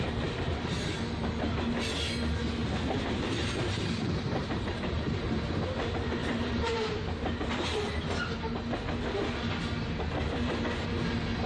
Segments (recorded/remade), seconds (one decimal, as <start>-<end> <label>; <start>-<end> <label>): 0.0-2.6 recorded; 2.6-5.0 remade; 5.0-6.2 recorded; 6.2-8.1 remade; 8.1-11.5 recorded